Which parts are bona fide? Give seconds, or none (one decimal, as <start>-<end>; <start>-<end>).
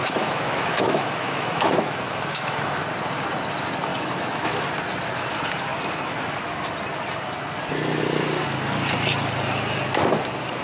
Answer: 2.8-3.9; 4.6-10.6